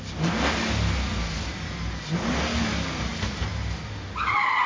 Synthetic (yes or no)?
no